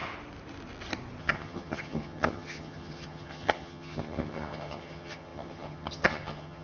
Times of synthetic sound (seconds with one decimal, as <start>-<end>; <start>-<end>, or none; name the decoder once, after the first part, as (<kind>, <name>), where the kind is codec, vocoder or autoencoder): 1.2-6.6 (vocoder, HiFi-GAN)